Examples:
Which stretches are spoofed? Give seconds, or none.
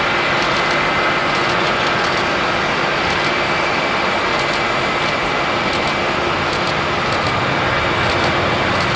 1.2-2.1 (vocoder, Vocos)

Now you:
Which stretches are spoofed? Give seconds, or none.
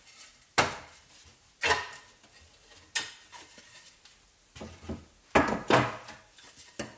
none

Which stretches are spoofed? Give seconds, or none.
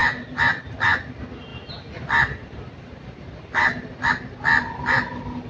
none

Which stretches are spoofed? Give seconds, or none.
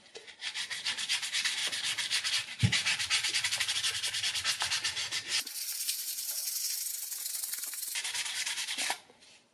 0.0-1.6 (vocoder, BigVGAN v2); 2.3-9.5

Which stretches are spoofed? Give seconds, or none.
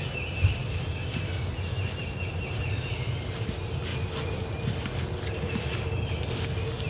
none